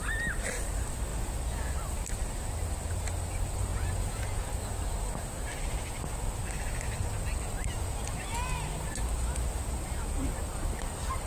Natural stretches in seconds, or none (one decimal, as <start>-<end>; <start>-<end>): 0.0-1.1; 1.7-3.7; 4.5-11.3